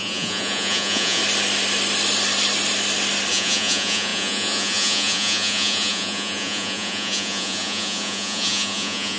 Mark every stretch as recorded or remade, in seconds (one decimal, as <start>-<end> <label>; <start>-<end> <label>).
0.0-1.2 remade; 1.2-3.3 recorded; 3.3-9.2 remade